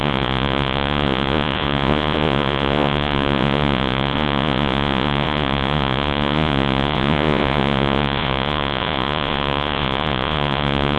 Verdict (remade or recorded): remade